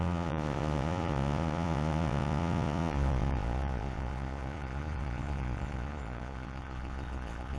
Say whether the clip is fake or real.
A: fake